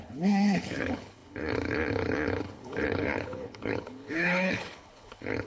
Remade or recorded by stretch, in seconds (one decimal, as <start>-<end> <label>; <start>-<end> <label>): 0.0-5.5 remade